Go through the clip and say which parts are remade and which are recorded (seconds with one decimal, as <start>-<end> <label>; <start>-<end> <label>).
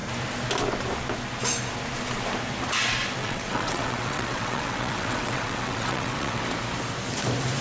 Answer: 0.0-3.2 recorded; 3.2-6.4 remade; 6.4-7.6 recorded